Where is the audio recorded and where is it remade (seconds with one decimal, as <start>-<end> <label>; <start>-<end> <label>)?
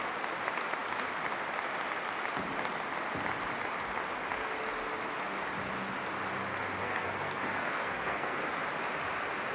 0.0-6.8 recorded; 6.8-8.4 remade; 8.4-9.5 recorded